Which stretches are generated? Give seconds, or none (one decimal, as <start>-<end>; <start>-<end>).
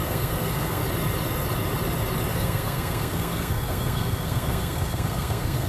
0.0-0.8; 2.3-5.7